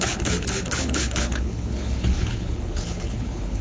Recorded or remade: remade